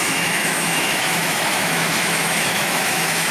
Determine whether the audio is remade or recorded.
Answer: remade